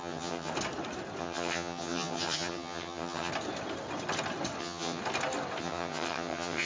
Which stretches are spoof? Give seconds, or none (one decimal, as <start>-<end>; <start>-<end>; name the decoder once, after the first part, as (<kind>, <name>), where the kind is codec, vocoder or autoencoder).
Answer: 0.0-0.5 (vocoder, HiFi-GAN); 1.2-3.3; 4.6-5.0; 5.6-6.7